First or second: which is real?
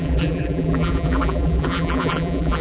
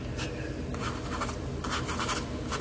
second